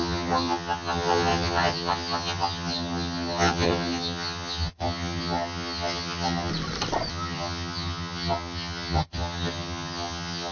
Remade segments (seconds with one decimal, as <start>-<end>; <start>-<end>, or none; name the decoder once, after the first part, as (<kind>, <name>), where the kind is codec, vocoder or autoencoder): 0.0-6.5 (vocoder, HiFi-GAN); 7.1-10.5